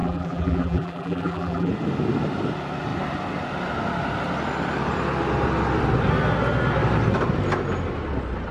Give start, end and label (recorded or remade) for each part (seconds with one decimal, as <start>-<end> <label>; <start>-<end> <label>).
0.0-1.7 remade; 1.7-8.5 recorded